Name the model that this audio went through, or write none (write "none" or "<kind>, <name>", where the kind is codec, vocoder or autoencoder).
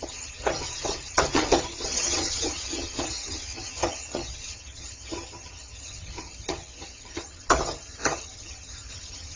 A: vocoder, HiFi-GAN